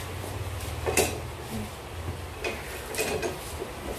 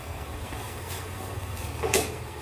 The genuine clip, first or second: first